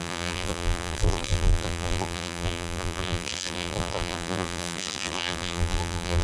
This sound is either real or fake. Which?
fake